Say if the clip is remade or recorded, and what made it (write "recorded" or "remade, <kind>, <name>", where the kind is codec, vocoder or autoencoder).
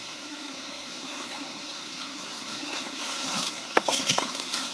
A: remade, codec, SNAC